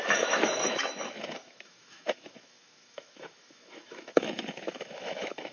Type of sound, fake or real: fake